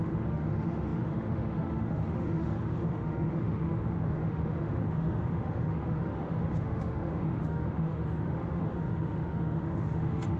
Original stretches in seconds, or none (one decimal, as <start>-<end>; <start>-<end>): none